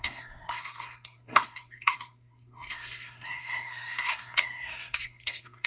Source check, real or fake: fake